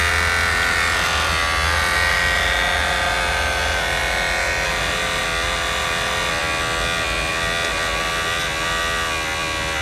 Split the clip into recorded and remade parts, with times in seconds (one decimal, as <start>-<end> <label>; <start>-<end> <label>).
0.0-9.8 recorded